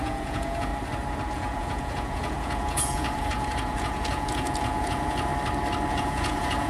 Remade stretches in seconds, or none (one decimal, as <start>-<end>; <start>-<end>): 0.0-0.7; 1.3-5.3; 5.9-6.7